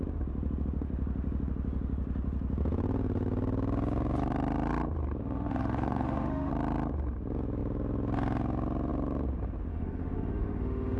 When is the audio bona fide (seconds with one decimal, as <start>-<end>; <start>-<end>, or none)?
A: 0.0-5.2; 6.5-9.7